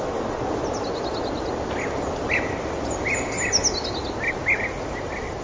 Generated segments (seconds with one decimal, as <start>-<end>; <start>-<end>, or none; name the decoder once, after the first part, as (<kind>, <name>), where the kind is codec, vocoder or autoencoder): none